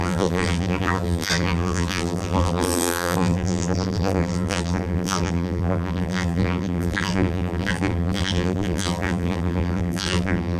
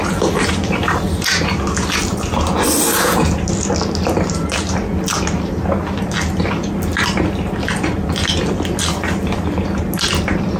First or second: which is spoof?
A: first